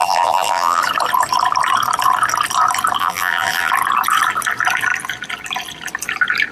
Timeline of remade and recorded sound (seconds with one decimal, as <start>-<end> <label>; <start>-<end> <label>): 0.0-0.8 remade; 0.8-3.0 recorded; 3.0-3.7 remade; 3.7-6.5 recorded